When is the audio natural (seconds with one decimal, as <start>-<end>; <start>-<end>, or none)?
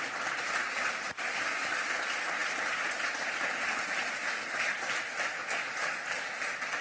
0.0-6.8